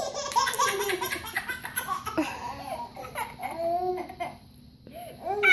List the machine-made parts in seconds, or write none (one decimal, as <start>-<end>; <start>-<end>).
none